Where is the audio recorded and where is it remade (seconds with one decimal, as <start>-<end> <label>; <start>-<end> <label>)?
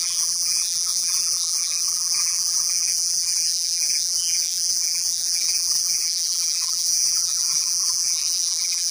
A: 0.0-8.9 remade